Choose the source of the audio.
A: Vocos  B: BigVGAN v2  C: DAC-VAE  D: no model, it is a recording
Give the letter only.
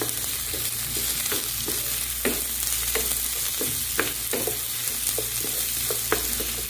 D